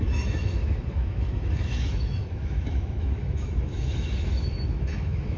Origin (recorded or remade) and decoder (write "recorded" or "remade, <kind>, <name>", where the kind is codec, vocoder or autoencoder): remade, autoencoder, DAC-VAE